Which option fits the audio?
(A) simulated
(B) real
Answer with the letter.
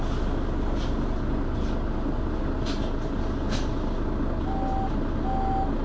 B